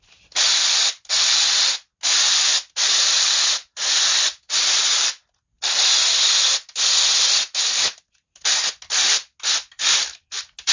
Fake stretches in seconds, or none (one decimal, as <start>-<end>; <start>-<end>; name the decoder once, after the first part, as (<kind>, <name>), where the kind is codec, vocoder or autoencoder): 7.8-8.6 (vocoder, BigVGAN v2)